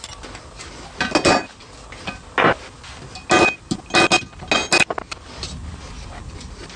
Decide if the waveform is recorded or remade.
recorded